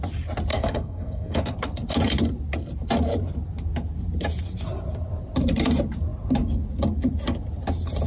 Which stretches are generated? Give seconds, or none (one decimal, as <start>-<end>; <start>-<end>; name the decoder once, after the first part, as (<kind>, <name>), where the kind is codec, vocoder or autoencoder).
0.5-1.4 (codec, SNAC)